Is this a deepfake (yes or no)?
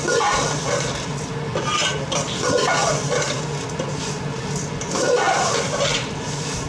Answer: no